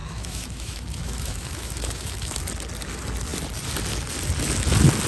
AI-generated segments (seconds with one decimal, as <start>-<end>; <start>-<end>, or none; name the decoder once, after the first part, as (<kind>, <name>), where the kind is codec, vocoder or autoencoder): 0.0-2.4 (autoencoder, DAC-VAE)